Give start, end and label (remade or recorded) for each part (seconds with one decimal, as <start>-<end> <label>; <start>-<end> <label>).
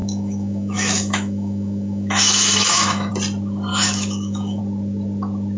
0.0-3.1 remade; 3.1-3.7 recorded; 3.7-4.6 remade; 4.6-5.6 recorded